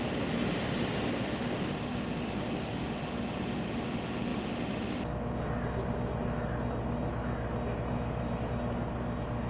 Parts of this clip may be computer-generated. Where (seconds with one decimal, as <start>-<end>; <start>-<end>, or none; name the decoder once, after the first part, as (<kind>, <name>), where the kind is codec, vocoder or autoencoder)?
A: 1.9-2.9 (codec, DAC)